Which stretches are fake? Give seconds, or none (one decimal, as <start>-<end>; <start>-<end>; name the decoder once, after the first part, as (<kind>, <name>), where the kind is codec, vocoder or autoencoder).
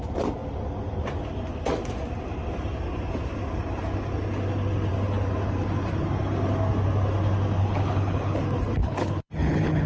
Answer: 7.6-8.4 (codec, HILCodec); 8.8-9.9